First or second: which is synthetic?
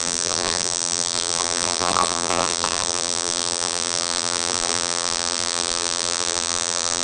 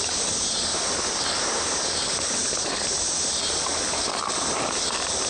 first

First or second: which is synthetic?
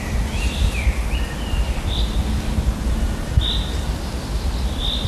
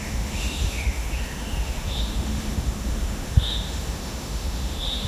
second